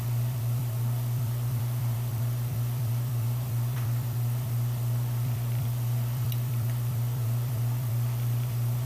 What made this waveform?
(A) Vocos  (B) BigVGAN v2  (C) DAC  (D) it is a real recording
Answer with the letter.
B